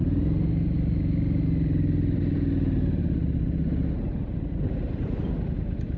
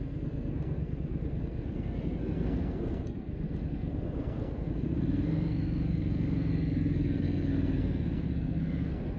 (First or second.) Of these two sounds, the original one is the first